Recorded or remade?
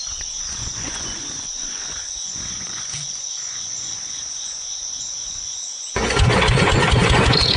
remade